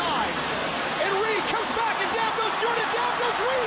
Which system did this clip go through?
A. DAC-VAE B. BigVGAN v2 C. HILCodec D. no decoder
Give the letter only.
B